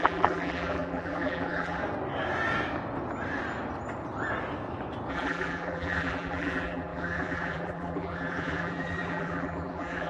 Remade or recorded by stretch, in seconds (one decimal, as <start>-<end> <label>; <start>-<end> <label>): 0.0-1.8 remade; 1.8-5.1 recorded; 5.1-10.1 remade

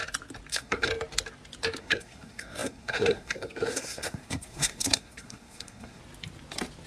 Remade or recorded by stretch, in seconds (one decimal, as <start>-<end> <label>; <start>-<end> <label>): 0.0-0.5 recorded; 0.5-0.9 remade; 0.9-1.8 recorded; 1.8-6.0 remade; 6.0-6.9 recorded

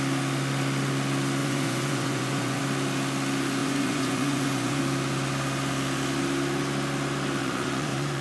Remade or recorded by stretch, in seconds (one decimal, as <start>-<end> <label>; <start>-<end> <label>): 0.0-1.4 recorded; 1.4-2.6 remade; 2.6-3.6 recorded; 3.6-4.8 remade; 4.8-7.4 recorded; 7.4-8.2 remade

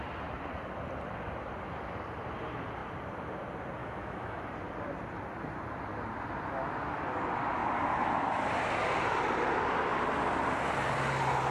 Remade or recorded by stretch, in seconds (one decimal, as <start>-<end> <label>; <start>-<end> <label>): 0.0-3.8 recorded; 3.8-4.4 remade; 4.4-11.5 recorded

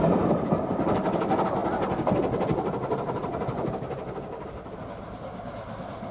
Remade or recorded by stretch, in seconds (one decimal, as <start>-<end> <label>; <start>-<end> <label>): 0.0-6.1 recorded

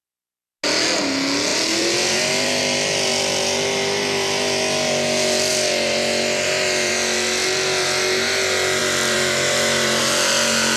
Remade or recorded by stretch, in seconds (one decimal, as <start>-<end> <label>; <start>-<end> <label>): 0.0-1.5 recorded; 1.5-2.6 remade; 2.6-5.5 recorded; 5.5-6.9 remade; 6.9-8.8 recorded; 8.8-10.0 remade; 10.0-10.8 recorded